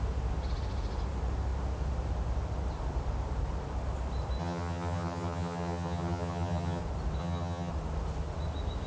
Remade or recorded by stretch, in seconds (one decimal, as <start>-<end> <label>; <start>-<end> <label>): 0.0-4.4 recorded; 4.4-6.8 remade; 6.8-7.2 recorded; 7.2-7.7 remade; 7.7-8.9 recorded